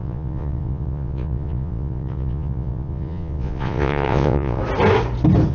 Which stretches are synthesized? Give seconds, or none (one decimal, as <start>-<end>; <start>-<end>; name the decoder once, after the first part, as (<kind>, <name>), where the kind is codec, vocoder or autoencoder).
0.0-4.6 (vocoder, Vocos)